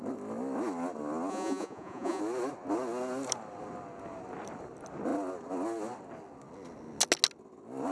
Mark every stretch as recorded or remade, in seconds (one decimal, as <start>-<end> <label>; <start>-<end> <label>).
0.0-1.3 recorded; 1.3-2.2 remade; 2.2-7.9 recorded